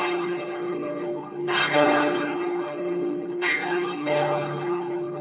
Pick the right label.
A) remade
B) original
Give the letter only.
A